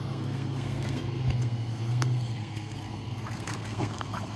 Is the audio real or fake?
fake